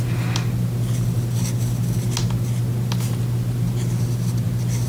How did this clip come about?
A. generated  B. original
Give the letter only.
B